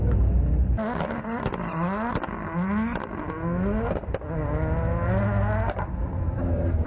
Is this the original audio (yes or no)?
yes